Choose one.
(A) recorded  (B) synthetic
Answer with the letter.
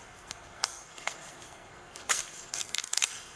B